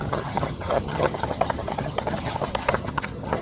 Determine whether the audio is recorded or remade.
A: remade